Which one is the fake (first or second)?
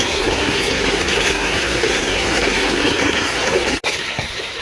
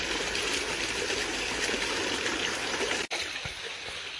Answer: first